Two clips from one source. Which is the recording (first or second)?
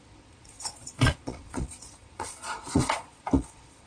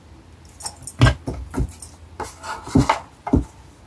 second